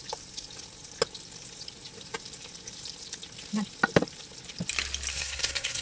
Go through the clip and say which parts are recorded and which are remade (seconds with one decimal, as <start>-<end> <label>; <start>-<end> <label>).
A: 0.0-5.1 recorded; 5.1-5.8 remade